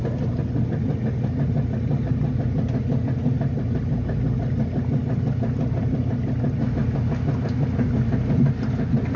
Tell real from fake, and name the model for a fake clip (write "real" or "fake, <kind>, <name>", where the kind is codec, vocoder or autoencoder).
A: real